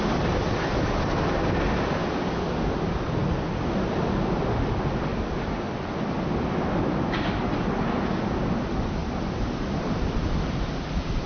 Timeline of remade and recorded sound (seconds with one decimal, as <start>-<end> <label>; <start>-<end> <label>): 0.0-5.1 recorded; 5.1-5.9 remade; 5.9-9.0 recorded; 9.0-10.6 remade; 10.6-11.3 recorded